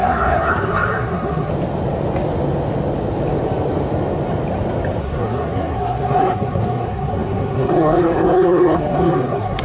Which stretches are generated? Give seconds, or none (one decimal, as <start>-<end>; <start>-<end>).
0.0-1.5; 5.0-9.6